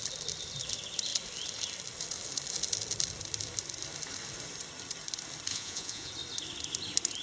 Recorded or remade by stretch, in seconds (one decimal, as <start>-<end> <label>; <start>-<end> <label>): 0.0-5.5 recorded; 5.5-6.1 remade; 6.1-7.2 recorded